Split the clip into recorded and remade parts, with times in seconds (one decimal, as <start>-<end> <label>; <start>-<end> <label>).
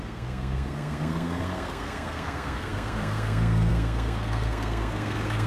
0.0-5.5 remade